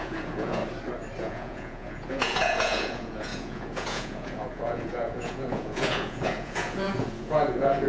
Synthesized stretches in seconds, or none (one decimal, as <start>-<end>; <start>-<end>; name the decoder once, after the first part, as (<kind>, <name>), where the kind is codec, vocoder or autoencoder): 0.0-0.6 (vocoder, Vocos); 1.2-7.9